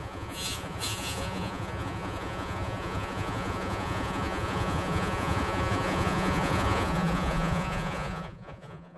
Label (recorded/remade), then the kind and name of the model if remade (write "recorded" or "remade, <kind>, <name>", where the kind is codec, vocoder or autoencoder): remade, vocoder, Vocos